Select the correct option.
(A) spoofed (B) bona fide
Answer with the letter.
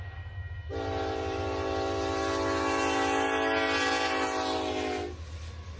B